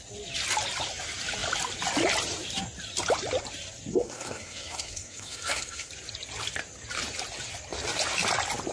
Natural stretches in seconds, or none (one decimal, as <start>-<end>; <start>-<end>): 0.0-3.9; 5.9-8.7